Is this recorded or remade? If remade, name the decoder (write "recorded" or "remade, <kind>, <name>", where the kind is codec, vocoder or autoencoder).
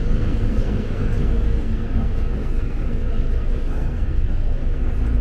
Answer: remade, codec, SNAC